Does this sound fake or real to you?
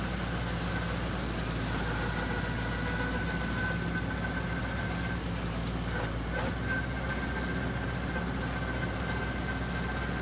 real